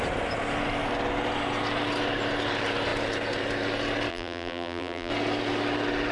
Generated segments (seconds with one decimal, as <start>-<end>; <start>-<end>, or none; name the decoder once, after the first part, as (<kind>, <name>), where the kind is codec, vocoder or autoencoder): 4.1-5.1 (vocoder, BigVGAN v2)